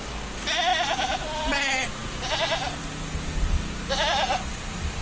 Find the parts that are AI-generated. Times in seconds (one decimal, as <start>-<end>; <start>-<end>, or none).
none